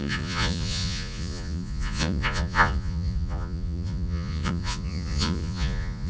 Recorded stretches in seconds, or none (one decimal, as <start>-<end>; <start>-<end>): none